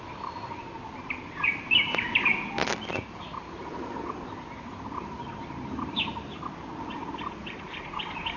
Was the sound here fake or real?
real